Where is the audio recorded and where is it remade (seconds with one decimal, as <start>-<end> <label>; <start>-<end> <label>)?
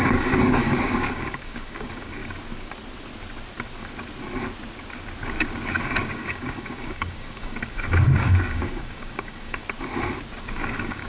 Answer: 0.0-2.2 remade; 2.2-5.8 recorded; 5.8-9.6 remade; 9.6-10.4 recorded; 10.4-11.1 remade